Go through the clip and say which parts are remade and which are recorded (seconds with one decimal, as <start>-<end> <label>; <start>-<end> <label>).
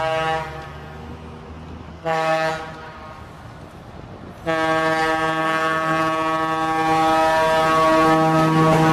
0.0-1.9 recorded; 1.9-2.5 remade; 2.5-5.4 recorded; 5.4-6.0 remade; 6.0-8.9 recorded